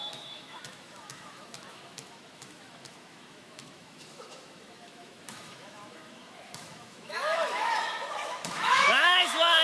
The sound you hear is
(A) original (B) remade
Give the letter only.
B